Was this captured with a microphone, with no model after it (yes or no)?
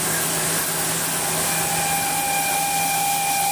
yes